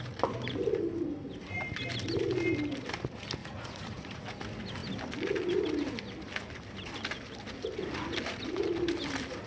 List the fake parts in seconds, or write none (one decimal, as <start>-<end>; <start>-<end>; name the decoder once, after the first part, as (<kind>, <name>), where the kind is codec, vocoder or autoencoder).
3.4-4.2 (vocoder, Vocos)